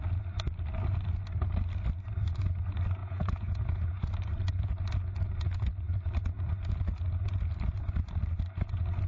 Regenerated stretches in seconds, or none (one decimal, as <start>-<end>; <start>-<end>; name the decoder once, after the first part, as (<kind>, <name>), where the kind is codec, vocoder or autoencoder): 3.0-4.1 (vocoder, Vocos)